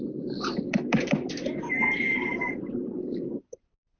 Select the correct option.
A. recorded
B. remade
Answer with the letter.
B